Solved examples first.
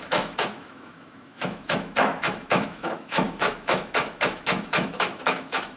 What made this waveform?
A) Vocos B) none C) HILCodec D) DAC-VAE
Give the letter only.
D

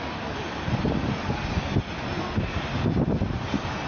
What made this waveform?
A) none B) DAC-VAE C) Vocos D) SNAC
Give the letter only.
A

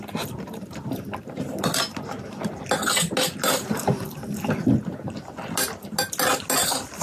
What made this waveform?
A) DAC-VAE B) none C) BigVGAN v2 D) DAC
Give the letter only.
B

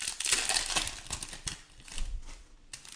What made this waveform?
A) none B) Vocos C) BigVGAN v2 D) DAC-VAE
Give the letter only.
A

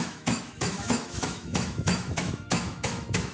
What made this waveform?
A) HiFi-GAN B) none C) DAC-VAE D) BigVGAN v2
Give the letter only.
C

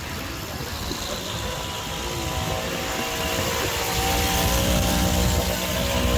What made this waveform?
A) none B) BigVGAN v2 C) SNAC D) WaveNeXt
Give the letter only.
A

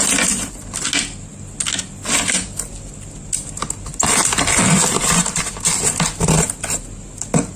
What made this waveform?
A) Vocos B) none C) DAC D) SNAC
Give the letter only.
B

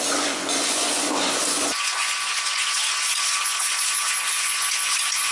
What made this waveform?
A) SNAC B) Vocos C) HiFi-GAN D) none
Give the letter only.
B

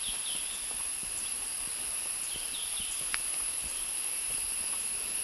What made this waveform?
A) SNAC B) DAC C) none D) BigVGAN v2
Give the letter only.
D